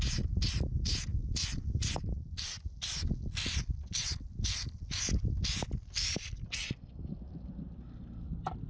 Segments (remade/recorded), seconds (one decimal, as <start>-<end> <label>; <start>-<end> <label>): 0.0-8.7 recorded